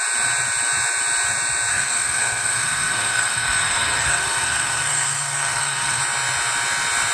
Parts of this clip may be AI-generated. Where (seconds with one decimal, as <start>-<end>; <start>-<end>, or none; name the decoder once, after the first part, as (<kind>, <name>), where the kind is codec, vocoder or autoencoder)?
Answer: 1.7-6.0 (codec, SNAC)